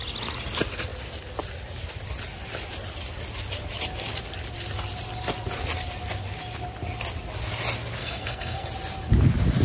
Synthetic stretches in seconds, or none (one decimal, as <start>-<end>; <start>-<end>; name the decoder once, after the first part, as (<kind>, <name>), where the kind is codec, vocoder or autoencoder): 8.0-8.7 (codec, SNAC)